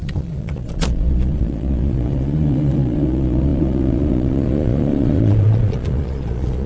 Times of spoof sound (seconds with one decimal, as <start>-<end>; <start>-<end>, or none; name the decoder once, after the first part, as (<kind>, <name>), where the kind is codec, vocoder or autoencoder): 0.0-6.7 (vocoder, Vocos)